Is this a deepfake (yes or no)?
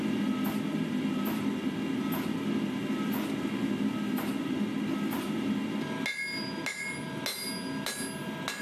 no